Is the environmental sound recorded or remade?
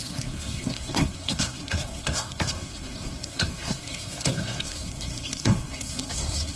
remade